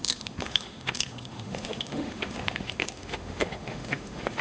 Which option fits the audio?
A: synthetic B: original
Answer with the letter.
A